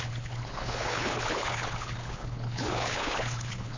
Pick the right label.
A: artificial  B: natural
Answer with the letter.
A